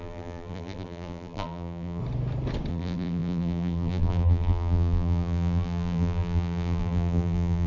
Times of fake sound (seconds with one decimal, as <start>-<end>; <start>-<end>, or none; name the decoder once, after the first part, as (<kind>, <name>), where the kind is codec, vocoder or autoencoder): 0.0-2.0 (vocoder, BigVGAN v2); 2.7-7.7